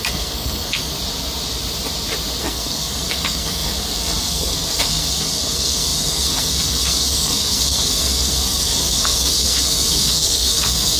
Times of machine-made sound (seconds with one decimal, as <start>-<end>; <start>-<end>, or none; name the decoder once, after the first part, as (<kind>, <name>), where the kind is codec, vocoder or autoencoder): 0.0-0.9 (codec, SNAC); 2.4-11.0